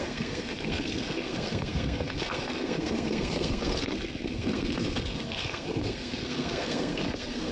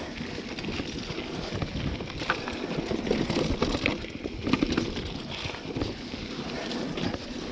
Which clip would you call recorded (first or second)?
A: second